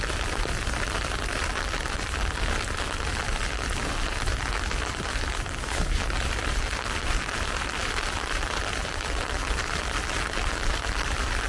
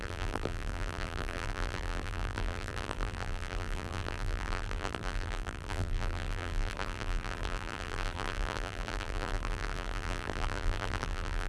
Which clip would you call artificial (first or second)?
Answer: second